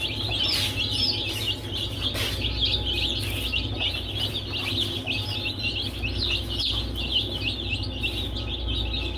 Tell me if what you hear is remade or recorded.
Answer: recorded